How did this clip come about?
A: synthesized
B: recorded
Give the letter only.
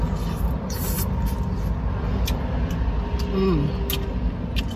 B